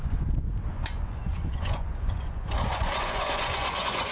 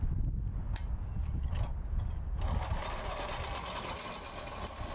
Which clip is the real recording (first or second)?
second